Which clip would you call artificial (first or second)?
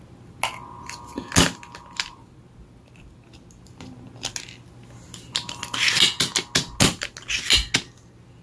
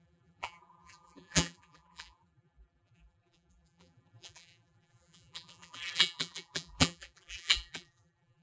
second